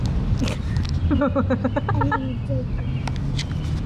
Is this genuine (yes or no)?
yes